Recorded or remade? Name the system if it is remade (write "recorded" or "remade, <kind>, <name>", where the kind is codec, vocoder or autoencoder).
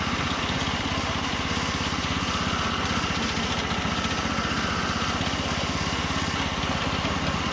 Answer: recorded